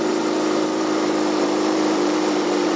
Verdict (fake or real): fake